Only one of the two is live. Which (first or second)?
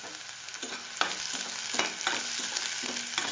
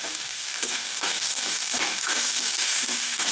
first